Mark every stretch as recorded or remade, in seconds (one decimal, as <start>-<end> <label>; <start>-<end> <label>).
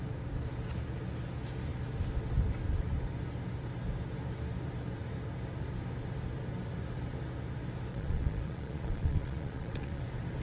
0.0-7.9 recorded; 7.9-10.0 remade; 10.0-10.4 recorded